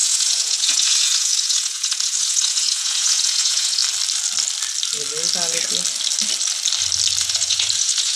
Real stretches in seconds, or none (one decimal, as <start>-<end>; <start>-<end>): 3.8-7.2